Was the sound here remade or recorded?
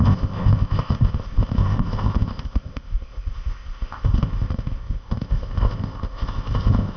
remade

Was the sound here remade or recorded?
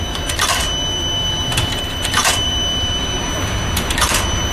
remade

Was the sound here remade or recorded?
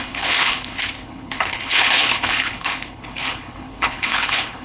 remade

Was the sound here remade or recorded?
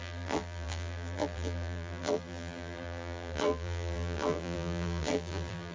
remade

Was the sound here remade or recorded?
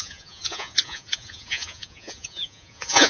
remade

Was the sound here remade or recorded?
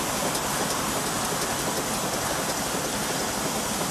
recorded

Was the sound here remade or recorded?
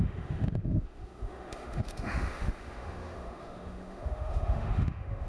remade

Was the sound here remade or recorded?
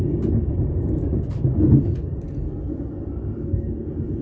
recorded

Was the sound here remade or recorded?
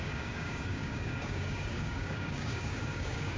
remade